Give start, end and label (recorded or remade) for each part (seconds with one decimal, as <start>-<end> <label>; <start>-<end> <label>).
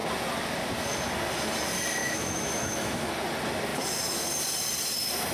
0.0-2.0 recorded; 2.0-3.1 remade; 3.1-5.3 recorded